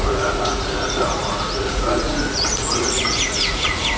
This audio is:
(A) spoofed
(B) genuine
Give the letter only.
A